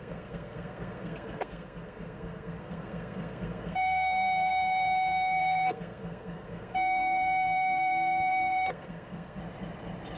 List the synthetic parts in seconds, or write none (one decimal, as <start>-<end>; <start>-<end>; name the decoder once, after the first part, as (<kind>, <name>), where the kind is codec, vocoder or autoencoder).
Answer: 0.0-9.4 (codec, SNAC)